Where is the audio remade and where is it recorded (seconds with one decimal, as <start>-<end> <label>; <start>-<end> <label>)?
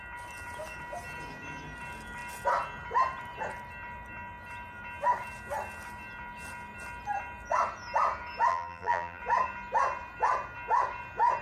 0.0-8.5 recorded; 8.5-9.2 remade; 9.2-11.4 recorded